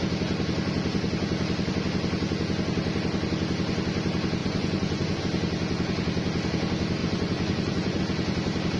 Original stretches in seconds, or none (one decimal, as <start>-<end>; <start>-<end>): 0.0-4.4; 5.2-7.0; 8.0-8.8